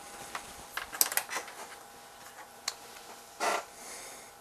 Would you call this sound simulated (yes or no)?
no